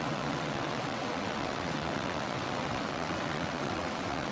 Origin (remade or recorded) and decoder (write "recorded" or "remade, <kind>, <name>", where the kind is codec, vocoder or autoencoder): remade, vocoder, WaveNeXt